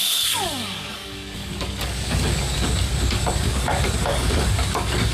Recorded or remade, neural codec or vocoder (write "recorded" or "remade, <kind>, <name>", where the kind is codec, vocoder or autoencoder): remade, codec, DAC